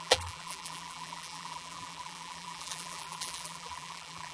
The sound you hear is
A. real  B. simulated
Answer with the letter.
B